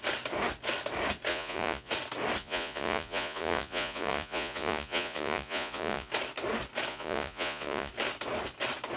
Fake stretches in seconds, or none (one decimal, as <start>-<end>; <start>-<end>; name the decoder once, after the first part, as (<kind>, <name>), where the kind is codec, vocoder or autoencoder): 1.3-1.9 (vocoder, Vocos); 2.4-6.1; 6.9-7.9